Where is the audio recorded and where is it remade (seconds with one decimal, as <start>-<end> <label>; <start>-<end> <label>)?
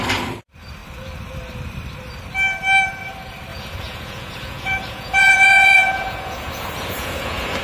0.0-3.5 recorded; 3.5-7.6 remade